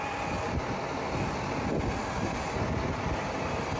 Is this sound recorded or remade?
recorded